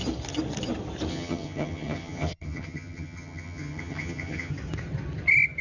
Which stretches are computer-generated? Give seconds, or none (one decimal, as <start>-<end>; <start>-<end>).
1.1-4.5